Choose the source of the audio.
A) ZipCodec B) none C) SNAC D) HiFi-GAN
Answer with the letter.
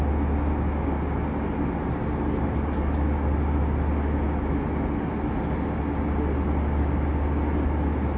B